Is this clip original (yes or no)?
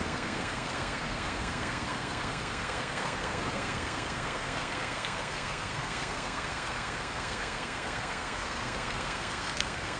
no